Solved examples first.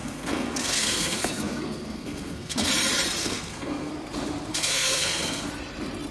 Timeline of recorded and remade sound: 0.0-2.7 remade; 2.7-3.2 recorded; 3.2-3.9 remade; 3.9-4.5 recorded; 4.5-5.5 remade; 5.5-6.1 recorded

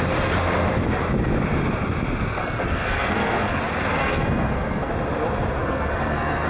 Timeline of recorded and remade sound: 0.0-2.4 recorded; 2.4-3.6 remade; 3.6-4.0 recorded; 4.0-4.9 remade; 4.9-5.6 recorded; 5.6-6.5 remade

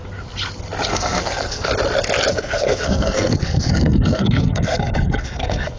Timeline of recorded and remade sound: 0.0-0.9 recorded; 0.9-1.7 remade; 1.7-2.3 recorded; 2.3-5.8 remade